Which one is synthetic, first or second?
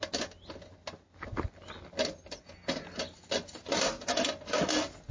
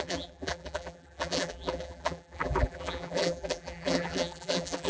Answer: second